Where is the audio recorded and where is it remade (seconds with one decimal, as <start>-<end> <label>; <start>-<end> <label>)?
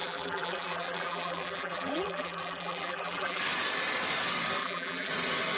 0.0-3.4 remade; 3.4-4.6 recorded; 4.6-5.1 remade; 5.1-5.6 recorded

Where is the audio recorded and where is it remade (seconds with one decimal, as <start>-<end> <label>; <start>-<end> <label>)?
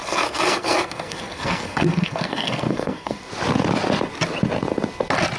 0.0-3.2 remade; 3.2-5.4 recorded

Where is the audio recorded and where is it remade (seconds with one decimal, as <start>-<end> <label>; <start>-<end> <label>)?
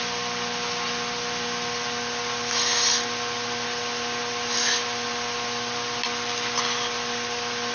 0.0-7.7 recorded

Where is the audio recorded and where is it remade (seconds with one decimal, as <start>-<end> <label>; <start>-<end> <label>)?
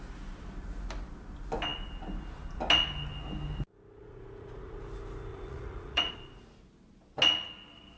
0.0-4.0 recorded; 4.0-4.8 remade; 4.8-5.3 recorded; 5.3-6.1 remade; 6.1-8.0 recorded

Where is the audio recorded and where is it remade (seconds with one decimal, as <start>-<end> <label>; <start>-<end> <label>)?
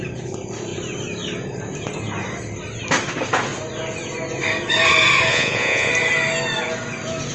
0.0-5.3 recorded; 5.3-5.9 remade; 5.9-7.3 recorded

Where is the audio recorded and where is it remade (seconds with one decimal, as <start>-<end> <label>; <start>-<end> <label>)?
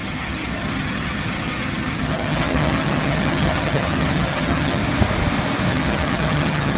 0.0-4.8 remade; 4.8-5.7 recorded; 5.7-6.8 remade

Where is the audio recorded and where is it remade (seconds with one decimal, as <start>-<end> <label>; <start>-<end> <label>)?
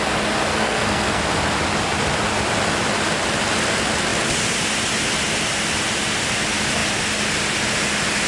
0.0-0.5 recorded; 0.5-1.2 remade; 1.2-8.3 recorded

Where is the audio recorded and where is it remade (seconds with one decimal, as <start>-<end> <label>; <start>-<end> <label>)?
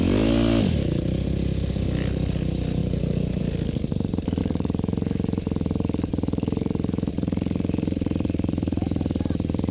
0.0-4.4 recorded; 4.4-7.1 remade; 7.1-9.7 recorded